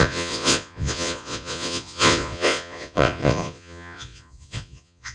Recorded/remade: remade